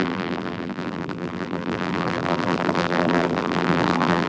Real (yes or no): no